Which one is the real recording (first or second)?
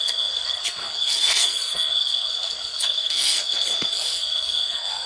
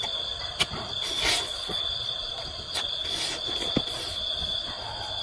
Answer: second